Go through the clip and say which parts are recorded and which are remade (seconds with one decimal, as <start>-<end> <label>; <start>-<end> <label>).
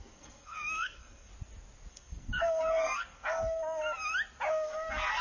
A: 0.0-1.3 remade; 1.3-1.9 recorded; 1.9-3.8 remade; 3.8-4.5 recorded; 4.5-5.2 remade